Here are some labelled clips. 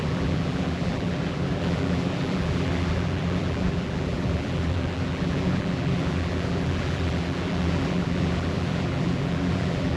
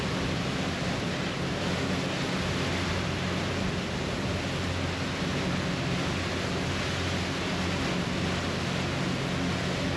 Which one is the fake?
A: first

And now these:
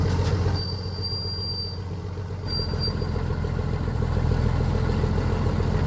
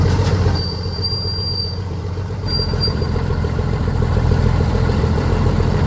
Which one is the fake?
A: second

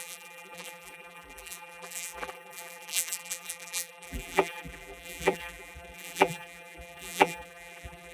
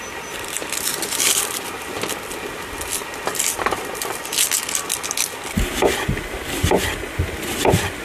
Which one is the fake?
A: first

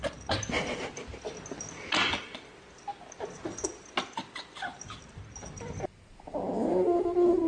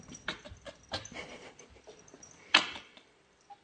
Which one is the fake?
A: second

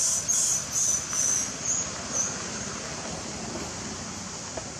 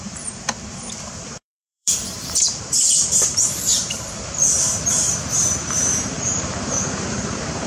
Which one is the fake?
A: second